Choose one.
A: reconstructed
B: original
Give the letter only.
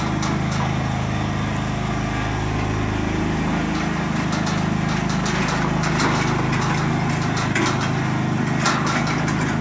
B